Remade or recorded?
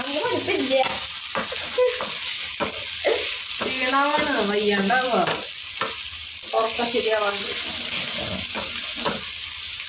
recorded